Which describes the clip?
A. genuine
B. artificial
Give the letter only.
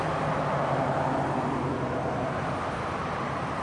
A